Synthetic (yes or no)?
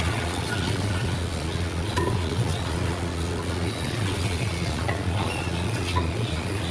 yes